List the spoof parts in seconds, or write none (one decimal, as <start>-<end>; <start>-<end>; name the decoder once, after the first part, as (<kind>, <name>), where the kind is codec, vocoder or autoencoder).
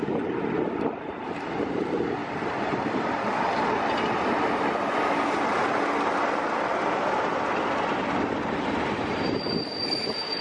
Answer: none